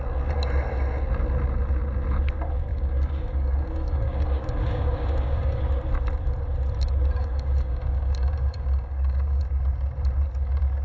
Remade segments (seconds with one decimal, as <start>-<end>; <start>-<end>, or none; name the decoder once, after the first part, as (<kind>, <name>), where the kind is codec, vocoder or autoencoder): 2.7-5.6 (codec, DAC); 7.2-9.4